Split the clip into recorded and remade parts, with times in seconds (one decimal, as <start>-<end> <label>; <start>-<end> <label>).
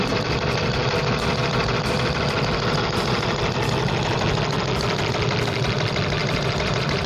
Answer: 0.0-6.2 recorded; 6.2-7.1 remade